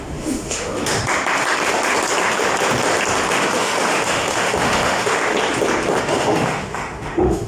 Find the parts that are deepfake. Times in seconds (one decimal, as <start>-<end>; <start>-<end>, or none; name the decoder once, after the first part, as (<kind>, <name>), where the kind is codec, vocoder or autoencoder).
0.0-1.0 (autoencoder, DAC-VAE); 3.3-5.2; 6.0-7.5